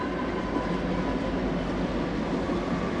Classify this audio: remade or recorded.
recorded